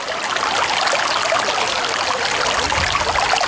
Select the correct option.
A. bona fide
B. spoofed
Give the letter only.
A